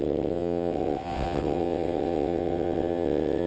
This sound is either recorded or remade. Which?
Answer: remade